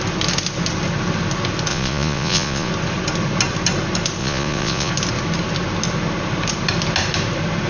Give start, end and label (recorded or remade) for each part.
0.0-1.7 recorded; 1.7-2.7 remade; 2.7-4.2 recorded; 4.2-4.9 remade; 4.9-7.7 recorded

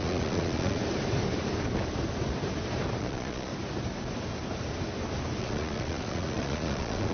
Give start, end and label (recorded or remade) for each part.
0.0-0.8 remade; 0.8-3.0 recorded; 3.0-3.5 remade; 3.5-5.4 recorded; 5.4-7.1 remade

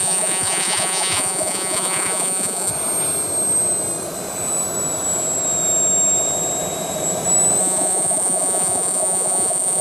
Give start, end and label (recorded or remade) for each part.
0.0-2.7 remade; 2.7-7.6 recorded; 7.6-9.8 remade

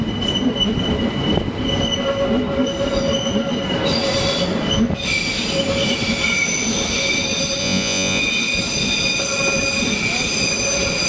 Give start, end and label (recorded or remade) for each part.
0.0-7.6 recorded; 7.6-8.2 remade; 8.2-11.1 recorded

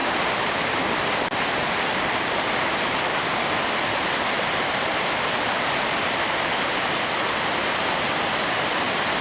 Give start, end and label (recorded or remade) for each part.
0.0-9.2 recorded